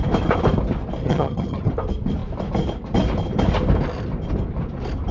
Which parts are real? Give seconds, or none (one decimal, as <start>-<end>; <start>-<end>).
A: 0.0-1.0; 1.7-5.1